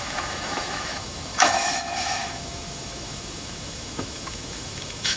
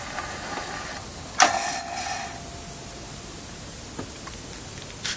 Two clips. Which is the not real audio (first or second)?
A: first